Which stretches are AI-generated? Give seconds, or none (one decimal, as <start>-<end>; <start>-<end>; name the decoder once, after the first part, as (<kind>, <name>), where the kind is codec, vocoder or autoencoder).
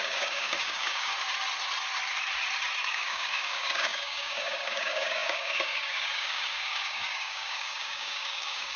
0.0-1.1 (codec, DAC); 2.9-8.8